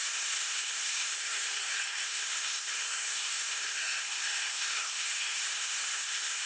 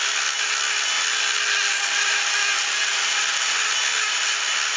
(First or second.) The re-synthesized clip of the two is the first